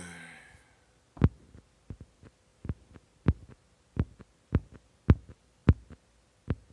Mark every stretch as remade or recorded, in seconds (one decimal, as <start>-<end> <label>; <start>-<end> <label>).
0.0-6.7 recorded